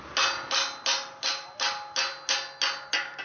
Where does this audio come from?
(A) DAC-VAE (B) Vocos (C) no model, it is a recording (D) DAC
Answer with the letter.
C